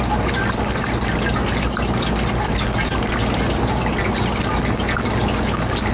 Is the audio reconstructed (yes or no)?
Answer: no